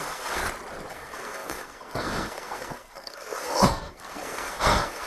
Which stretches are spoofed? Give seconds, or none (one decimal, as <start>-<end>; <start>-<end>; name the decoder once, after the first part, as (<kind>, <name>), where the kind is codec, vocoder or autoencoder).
0.0-0.4 (codec, SNAC); 0.9-5.1